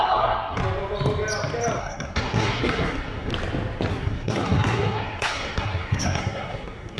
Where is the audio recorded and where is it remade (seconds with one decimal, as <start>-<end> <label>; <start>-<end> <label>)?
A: 0.0-0.6 remade; 0.6-1.8 recorded; 1.8-3.3 remade; 3.3-3.9 recorded; 3.9-7.0 remade